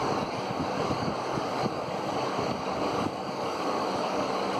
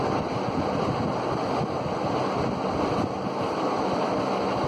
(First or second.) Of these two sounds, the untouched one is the second